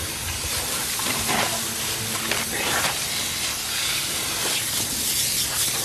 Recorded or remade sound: recorded